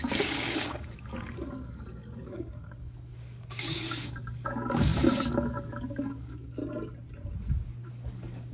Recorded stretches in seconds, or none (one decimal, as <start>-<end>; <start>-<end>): 6.6-7.9